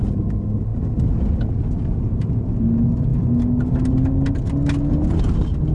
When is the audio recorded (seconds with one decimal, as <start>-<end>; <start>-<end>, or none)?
0.0-5.7